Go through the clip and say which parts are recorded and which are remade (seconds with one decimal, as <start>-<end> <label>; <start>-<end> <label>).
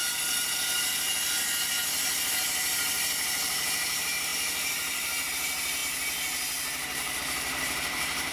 0.0-2.3 recorded; 2.3-8.3 remade